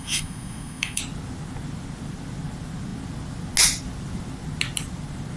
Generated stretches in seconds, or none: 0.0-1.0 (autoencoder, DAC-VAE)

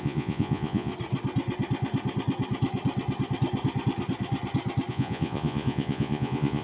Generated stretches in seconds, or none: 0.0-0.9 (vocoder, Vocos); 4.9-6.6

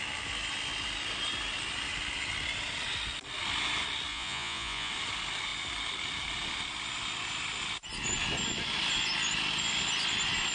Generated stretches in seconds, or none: 4.1-4.9 (vocoder, Vocos)

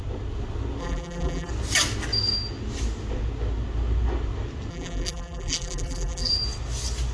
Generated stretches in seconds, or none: 0.8-1.5 (vocoder, BigVGAN v2); 4.7-6.3